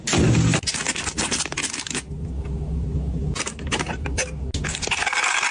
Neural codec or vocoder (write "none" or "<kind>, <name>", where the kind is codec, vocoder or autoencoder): none